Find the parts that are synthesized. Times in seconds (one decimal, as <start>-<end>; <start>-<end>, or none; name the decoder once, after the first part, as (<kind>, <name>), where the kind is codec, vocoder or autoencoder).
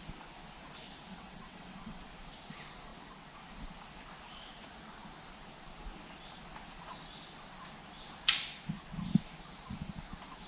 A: 1.1-2.0 (vocoder, WaveNeXt)